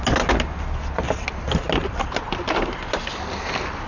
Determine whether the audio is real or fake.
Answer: real